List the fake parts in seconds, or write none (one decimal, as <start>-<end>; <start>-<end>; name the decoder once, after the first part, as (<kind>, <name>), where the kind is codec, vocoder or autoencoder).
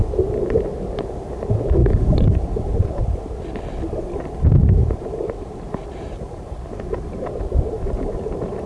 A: 1.8-3.0 (vocoder, BigVGAN v2); 4.8-7.4